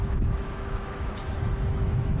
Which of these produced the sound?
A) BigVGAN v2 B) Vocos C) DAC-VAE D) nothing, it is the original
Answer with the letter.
C